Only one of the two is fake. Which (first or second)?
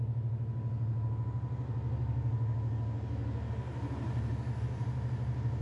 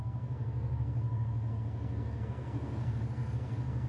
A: second